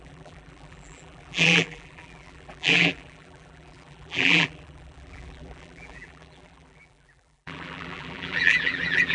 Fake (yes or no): yes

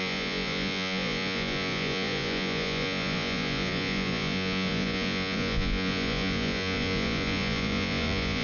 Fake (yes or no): yes